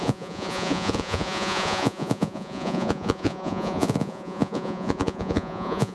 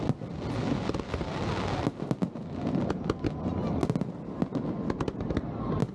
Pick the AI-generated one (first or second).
first